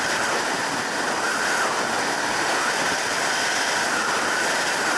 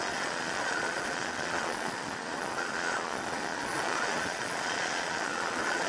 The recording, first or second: first